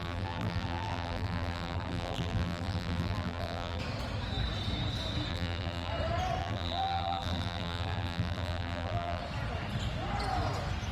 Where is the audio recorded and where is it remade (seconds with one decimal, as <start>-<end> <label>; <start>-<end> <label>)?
0.0-3.8 remade; 3.8-5.3 recorded; 5.3-5.9 remade; 5.9-6.4 recorded; 6.4-9.2 remade; 9.2-10.9 recorded